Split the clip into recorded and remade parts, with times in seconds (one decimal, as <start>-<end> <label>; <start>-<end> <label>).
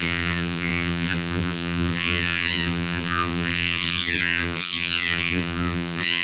0.0-6.2 remade